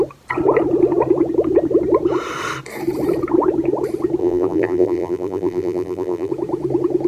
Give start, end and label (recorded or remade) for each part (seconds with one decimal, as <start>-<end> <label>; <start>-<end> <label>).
0.0-4.2 recorded; 4.2-6.3 remade; 6.3-7.1 recorded